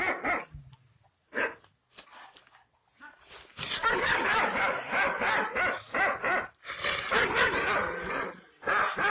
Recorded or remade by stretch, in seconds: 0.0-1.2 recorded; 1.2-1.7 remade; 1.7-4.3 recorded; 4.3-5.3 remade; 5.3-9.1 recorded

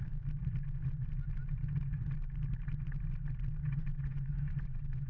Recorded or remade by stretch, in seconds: 0.0-3.6 recorded; 3.6-5.1 remade

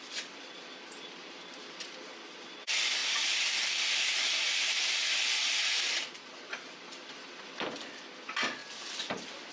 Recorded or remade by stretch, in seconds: 0.0-9.5 remade

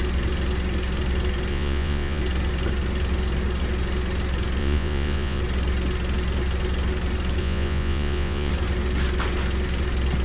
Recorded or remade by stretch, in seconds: 0.0-1.5 recorded; 1.5-2.2 remade; 2.2-4.6 recorded; 4.6-5.4 remade; 5.4-7.4 recorded; 7.4-8.5 remade; 8.5-10.2 recorded

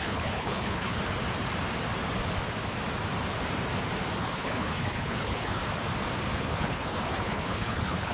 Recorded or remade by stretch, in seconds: 0.0-1.0 remade; 1.0-4.2 recorded; 4.2-5.6 remade; 5.6-6.4 recorded; 6.4-8.1 remade